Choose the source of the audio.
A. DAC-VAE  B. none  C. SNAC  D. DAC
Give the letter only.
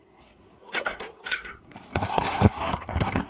C